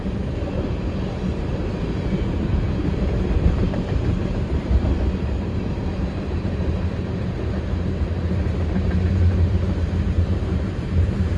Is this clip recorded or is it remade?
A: remade